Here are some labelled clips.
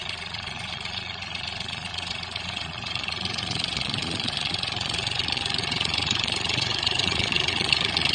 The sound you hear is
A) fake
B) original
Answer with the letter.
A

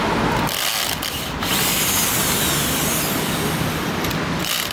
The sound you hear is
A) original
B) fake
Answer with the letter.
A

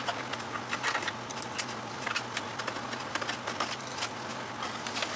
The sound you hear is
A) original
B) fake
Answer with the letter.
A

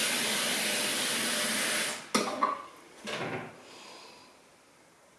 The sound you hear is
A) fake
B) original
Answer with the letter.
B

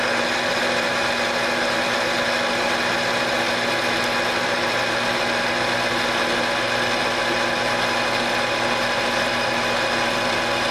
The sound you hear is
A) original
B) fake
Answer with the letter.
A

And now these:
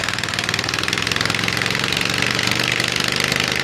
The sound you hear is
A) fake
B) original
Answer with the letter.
A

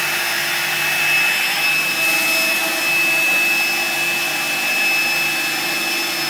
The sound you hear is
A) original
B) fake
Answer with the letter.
A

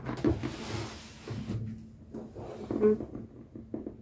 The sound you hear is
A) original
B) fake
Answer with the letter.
A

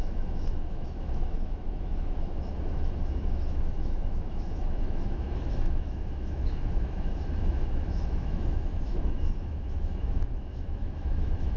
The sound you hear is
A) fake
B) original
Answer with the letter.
A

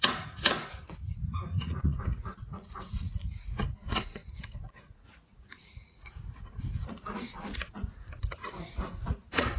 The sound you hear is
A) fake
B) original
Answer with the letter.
A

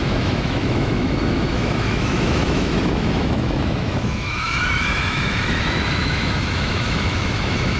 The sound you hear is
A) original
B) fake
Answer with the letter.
B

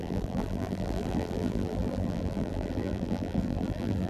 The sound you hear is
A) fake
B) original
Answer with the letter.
A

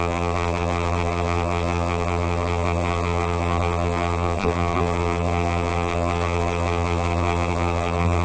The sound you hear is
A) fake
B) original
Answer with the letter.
A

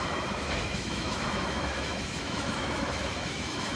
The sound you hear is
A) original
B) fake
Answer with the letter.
B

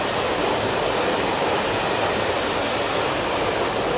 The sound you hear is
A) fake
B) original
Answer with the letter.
B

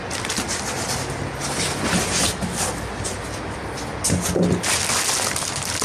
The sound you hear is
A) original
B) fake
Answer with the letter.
A